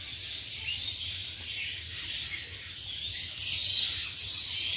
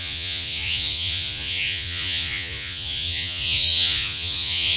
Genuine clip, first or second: first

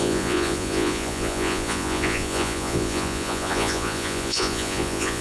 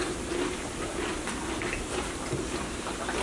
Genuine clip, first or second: second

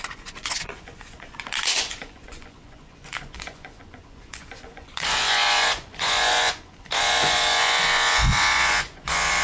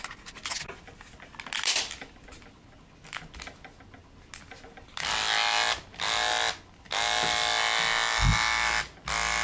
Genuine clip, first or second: second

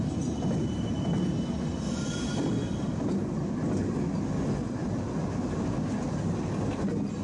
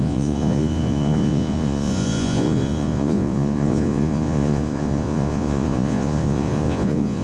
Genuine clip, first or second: first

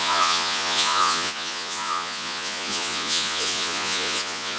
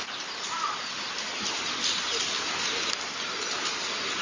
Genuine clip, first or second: second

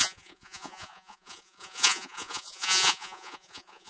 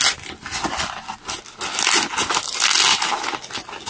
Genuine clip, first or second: second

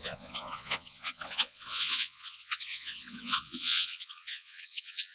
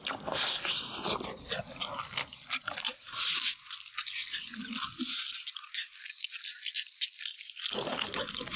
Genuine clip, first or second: second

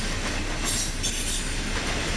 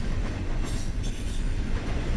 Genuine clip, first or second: first